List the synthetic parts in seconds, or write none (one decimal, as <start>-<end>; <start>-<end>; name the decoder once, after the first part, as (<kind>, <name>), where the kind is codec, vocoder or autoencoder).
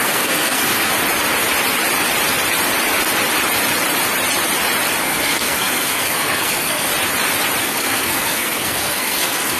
0.0-0.9 (codec, SNAC); 5.0-6.9; 7.6-9.6